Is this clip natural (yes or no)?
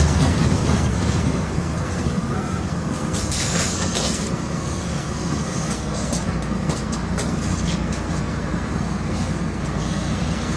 no